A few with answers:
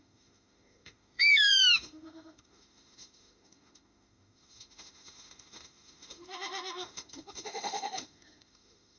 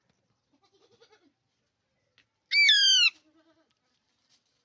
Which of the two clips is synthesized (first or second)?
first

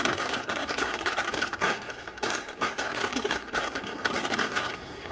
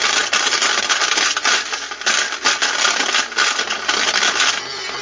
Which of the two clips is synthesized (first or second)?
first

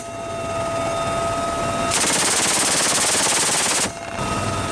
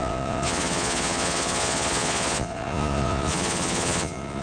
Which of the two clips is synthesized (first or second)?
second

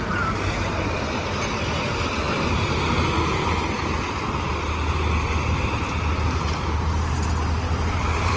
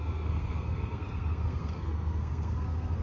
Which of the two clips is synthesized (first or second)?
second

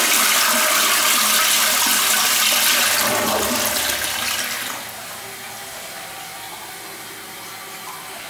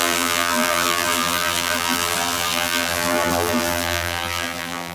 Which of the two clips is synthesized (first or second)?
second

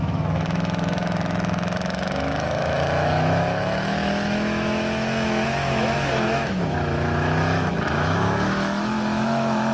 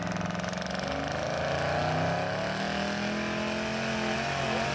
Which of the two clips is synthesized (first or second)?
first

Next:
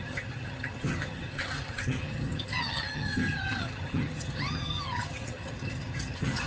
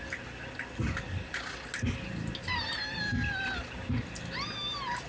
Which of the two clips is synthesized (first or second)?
first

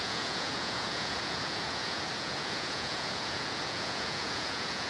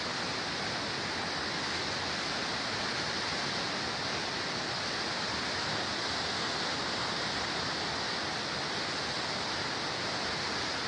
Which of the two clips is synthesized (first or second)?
first